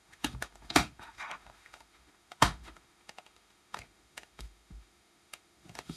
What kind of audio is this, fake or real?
fake